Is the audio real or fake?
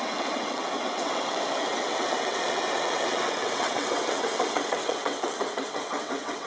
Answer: fake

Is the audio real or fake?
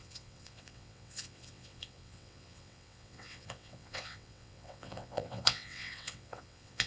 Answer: fake